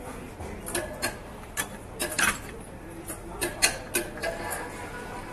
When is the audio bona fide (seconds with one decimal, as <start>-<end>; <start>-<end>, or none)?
0.0-1.3; 3.6-5.3